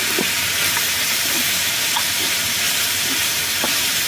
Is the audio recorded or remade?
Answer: remade